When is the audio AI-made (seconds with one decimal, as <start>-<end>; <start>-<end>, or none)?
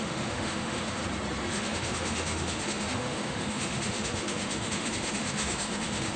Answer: 0.0-1.0; 1.5-6.2